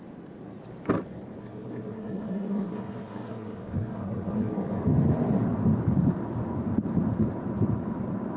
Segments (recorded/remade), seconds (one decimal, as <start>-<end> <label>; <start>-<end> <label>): 0.0-1.4 recorded; 1.4-4.8 remade; 4.8-8.4 recorded